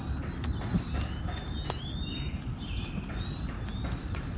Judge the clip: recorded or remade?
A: recorded